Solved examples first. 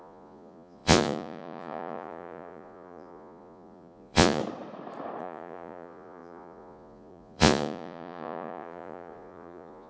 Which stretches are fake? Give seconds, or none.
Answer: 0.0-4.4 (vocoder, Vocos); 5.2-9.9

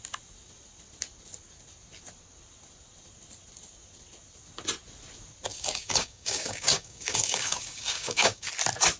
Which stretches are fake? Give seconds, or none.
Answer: 5.5-8.5 (codec, DAC)

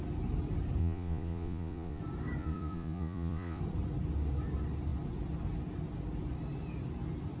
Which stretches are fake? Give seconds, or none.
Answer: 0.8-2.0 (vocoder, Vocos); 2.4-3.6

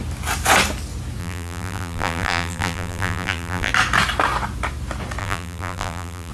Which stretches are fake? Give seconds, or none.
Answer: 1.2-3.7 (vocoder, BigVGAN v2); 5.2-6.3

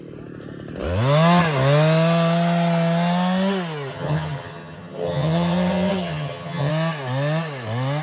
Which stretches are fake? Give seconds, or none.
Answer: 3.9-6.7 (vocoder, HiFi-GAN)

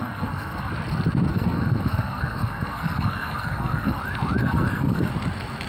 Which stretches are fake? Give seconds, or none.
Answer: 0.0-0.7 (codec, SNAC); 1.3-4.0; 4.4-5.1

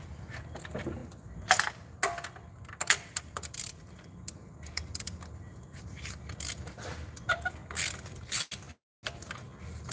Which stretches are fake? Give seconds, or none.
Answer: none

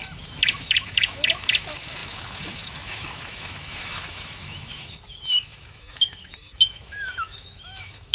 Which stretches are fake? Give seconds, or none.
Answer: 0.0-8.1 (autoencoder, DAC-VAE)